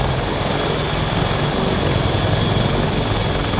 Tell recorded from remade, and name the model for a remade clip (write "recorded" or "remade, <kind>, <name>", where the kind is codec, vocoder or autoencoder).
recorded